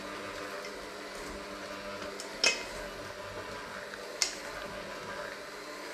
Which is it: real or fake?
real